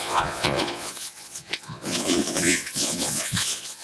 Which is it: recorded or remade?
remade